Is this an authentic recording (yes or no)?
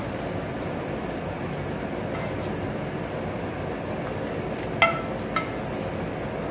yes